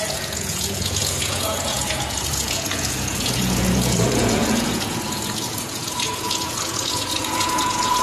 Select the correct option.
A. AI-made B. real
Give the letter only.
A